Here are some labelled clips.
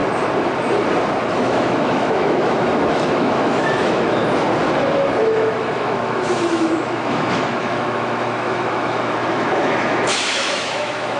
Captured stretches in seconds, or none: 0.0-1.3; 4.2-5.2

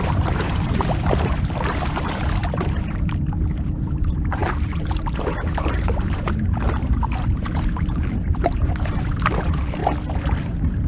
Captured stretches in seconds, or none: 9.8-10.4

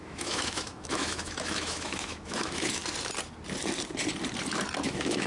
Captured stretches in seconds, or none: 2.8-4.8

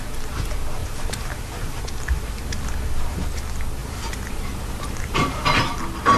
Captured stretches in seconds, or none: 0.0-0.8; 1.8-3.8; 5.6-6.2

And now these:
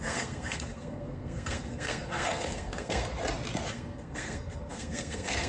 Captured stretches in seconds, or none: 3.1-3.7

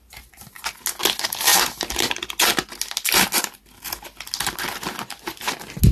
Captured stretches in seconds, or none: 0.0-1.5; 2.3-5.9